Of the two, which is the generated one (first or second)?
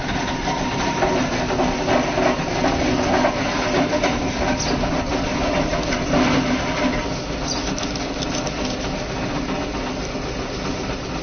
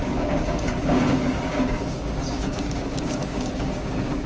second